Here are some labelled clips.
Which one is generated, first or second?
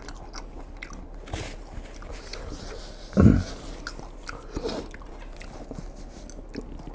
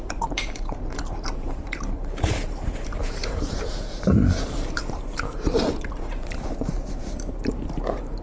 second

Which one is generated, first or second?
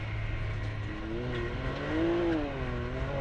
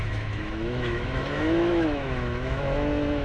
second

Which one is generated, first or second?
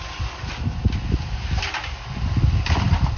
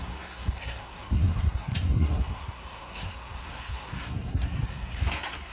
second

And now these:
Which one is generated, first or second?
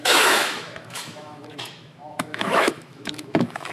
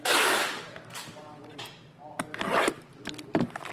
first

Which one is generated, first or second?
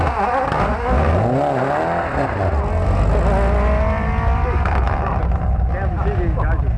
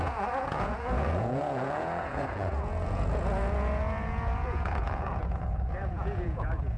second